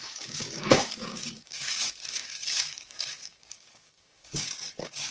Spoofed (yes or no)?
yes